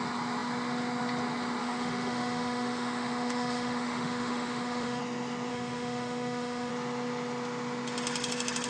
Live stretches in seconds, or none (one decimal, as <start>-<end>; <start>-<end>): 0.0-1.6; 5.0-5.5; 6.7-8.7